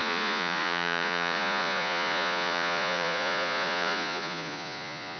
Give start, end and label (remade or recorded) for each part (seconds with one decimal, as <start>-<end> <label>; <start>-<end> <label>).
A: 0.0-5.2 remade